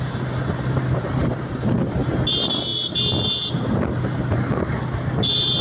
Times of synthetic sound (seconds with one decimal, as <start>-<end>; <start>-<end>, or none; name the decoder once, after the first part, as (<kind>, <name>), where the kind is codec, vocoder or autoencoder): none